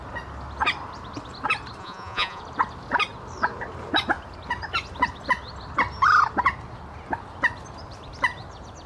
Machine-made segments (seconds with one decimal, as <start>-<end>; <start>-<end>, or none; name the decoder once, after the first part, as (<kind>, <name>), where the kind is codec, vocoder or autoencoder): 1.8-2.4 (vocoder, Vocos)